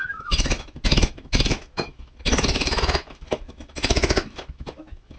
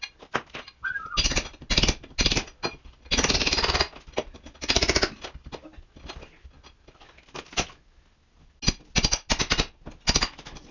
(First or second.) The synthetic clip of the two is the first